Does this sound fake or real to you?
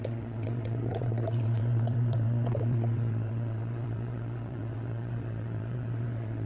fake